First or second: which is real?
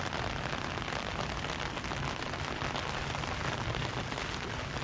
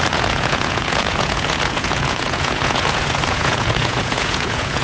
first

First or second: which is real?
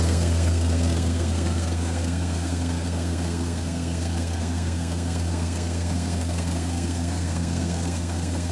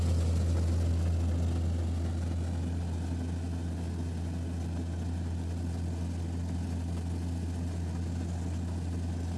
second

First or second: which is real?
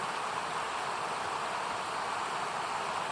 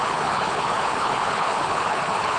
first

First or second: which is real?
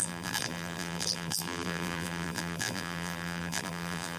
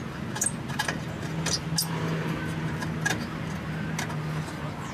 second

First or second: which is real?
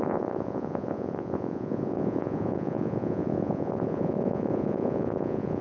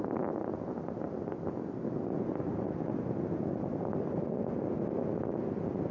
second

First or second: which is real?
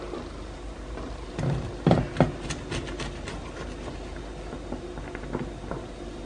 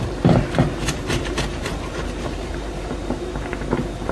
first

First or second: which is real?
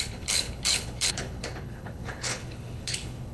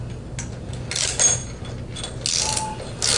second